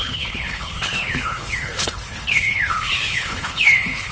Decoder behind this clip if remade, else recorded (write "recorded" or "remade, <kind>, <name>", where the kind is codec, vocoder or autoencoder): remade, codec, HILCodec